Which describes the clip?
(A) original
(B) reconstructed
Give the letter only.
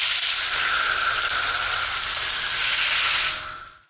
A